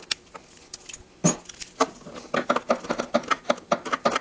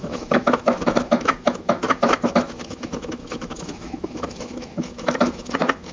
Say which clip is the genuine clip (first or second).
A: first